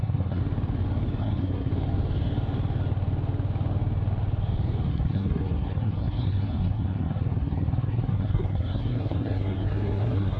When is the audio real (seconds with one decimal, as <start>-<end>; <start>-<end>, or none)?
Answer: 0.4-1.2; 1.7-4.9